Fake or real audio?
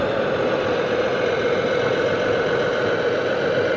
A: real